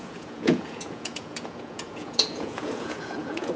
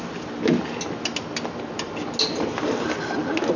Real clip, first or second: second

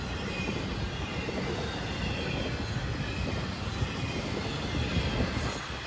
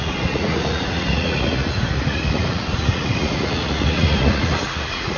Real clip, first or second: first